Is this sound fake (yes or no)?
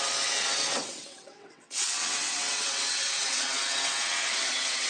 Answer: yes